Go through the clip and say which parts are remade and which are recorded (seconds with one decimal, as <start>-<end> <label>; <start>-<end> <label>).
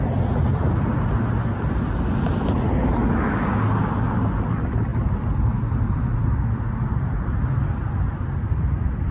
0.0-9.1 recorded